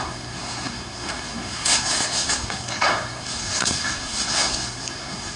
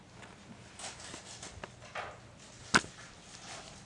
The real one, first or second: second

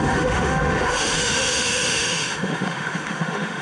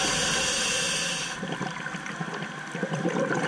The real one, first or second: second